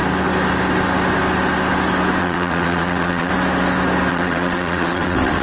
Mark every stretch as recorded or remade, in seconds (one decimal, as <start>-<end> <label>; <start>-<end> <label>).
0.0-2.2 recorded; 2.2-3.3 remade; 3.3-4.1 recorded; 4.1-5.4 remade